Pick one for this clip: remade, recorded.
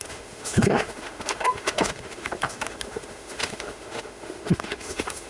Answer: remade